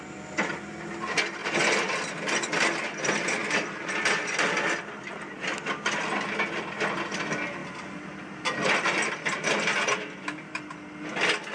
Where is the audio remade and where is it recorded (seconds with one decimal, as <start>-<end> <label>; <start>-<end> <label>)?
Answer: 0.0-11.5 recorded